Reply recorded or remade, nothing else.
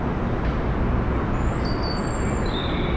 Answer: recorded